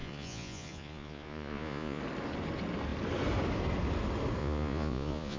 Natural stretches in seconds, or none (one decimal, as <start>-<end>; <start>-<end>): 2.0-4.4